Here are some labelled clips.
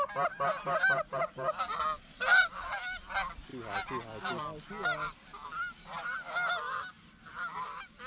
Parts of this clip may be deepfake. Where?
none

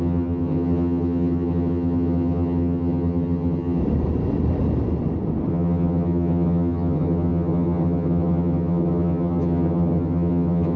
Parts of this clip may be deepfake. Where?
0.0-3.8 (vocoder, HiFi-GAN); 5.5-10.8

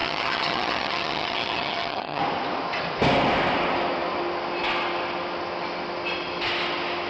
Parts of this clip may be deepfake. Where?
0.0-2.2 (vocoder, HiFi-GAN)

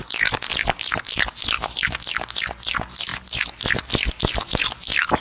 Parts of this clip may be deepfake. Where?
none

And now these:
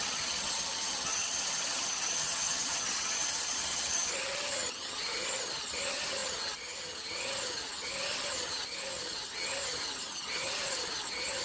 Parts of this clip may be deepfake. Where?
0.0-11.4 (vocoder, HiFi-GAN)